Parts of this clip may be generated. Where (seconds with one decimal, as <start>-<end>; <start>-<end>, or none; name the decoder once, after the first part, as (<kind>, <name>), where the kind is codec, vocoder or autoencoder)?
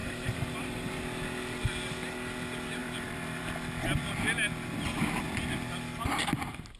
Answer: 0.0-1.0 (vocoder, BigVGAN v2); 2.8-3.4